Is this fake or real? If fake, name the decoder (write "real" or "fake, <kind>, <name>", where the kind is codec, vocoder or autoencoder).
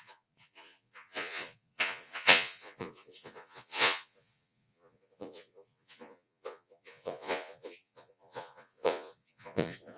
fake, vocoder, Vocos